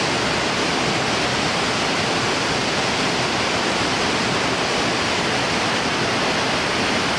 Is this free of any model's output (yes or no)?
yes